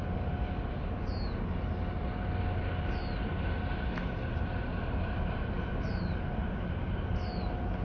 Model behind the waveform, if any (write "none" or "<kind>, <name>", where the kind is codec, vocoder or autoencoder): none